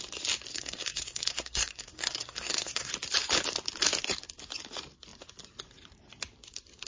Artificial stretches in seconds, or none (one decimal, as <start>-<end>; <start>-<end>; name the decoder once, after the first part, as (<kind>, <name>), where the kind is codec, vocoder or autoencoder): 0.5-2.9 (codec, SNAC)